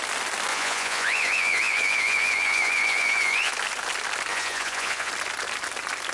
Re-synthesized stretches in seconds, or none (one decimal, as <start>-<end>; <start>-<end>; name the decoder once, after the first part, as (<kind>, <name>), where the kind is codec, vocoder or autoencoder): 0.5-3.5 (vocoder, Vocos); 4.3-5.1